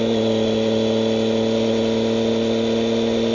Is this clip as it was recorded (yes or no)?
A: yes